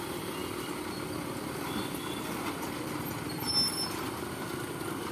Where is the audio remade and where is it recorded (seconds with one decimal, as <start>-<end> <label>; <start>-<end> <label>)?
0.0-5.1 recorded